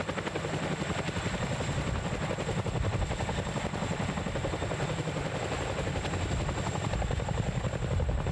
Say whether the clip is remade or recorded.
recorded